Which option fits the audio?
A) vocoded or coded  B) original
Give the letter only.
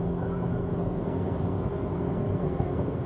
A